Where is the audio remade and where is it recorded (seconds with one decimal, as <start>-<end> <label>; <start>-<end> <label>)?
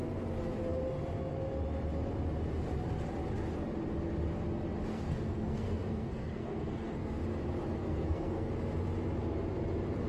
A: 0.0-4.9 recorded; 4.9-7.2 remade; 7.2-7.7 recorded; 7.7-8.5 remade; 8.5-10.1 recorded